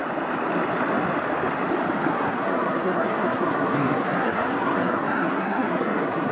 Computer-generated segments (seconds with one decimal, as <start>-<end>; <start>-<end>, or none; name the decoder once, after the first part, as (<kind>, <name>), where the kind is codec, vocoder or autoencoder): 2.1-6.3 (codec, SNAC)